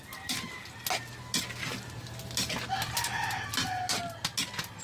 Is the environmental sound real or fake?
real